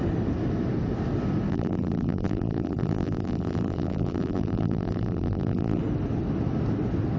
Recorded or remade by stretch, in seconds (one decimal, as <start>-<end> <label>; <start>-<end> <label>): 0.0-1.5 recorded; 1.5-5.8 remade; 5.8-7.2 recorded